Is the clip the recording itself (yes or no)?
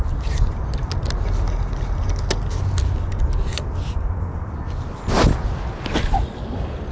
yes